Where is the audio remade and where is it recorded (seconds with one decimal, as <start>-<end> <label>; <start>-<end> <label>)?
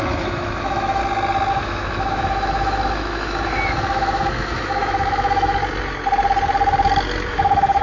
0.0-1.0 remade; 1.0-1.5 recorded; 1.5-5.6 remade; 5.6-7.3 recorded; 7.3-7.8 remade